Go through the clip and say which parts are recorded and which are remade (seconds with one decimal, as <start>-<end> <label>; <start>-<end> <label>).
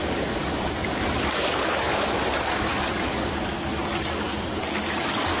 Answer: 0.0-5.4 remade